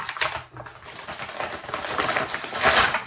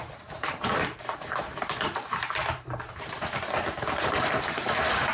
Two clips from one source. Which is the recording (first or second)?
first